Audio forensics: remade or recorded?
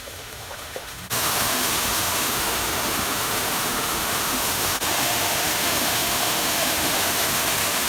remade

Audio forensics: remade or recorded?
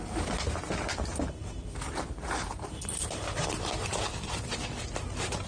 recorded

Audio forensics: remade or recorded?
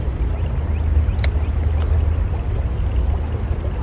recorded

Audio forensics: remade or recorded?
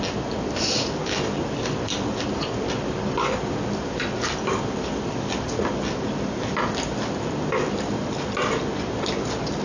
recorded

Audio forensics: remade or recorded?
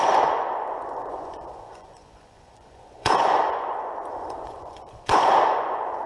remade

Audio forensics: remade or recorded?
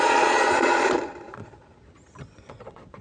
remade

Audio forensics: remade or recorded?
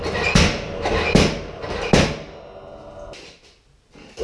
recorded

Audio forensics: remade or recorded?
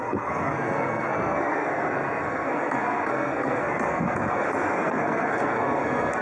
remade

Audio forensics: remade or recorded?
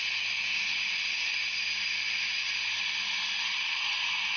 recorded